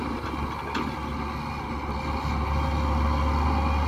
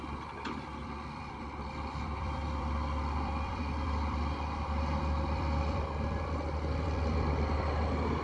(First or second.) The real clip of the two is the first